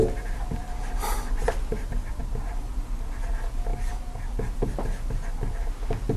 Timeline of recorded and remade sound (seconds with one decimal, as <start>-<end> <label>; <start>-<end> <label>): 0.0-1.4 recorded; 1.4-2.2 remade; 2.2-2.7 recorded; 2.7-3.3 remade; 3.3-6.2 recorded